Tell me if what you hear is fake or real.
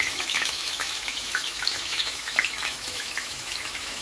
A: fake